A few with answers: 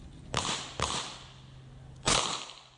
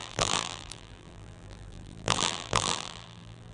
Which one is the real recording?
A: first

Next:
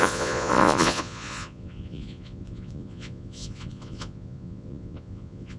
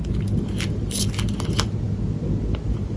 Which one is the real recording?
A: second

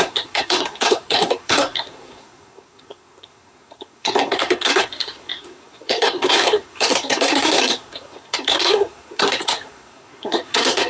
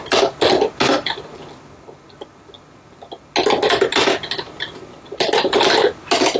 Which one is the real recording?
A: second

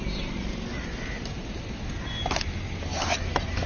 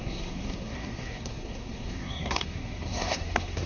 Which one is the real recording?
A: first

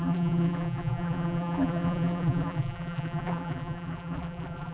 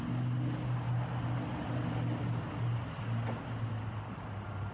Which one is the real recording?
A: second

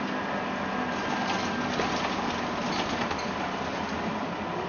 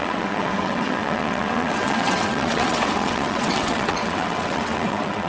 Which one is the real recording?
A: first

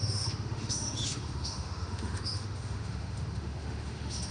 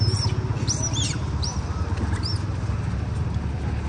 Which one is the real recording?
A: second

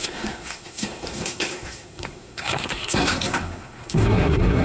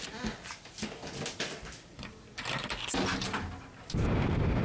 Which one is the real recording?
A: second